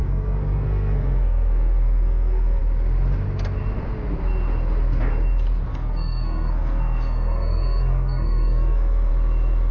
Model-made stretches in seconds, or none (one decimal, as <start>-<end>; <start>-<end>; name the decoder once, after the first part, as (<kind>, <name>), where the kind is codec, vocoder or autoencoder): 0.0-2.6 (codec, SNAC); 5.7-9.1